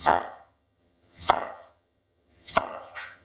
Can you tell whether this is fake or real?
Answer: fake